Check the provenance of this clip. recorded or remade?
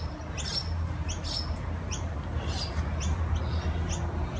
recorded